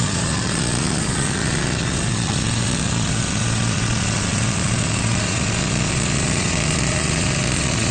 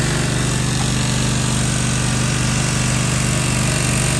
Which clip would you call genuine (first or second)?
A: second